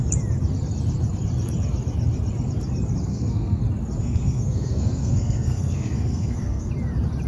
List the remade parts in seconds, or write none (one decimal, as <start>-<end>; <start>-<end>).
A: 3.1-3.6; 4.0-6.7